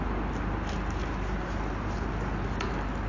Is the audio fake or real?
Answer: real